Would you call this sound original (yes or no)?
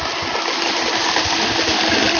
yes